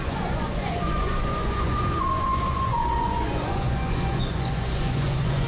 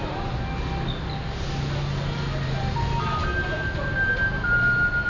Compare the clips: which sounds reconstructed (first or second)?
first